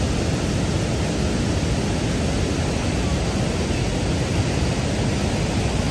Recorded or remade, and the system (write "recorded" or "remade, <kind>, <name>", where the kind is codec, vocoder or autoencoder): recorded